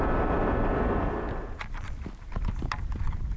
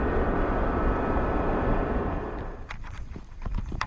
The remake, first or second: second